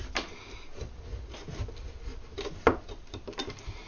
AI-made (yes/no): no